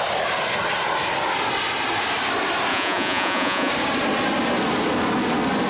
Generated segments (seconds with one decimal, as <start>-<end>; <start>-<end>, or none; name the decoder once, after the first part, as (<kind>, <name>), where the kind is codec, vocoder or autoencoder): 2.7-3.7 (vocoder, Vocos)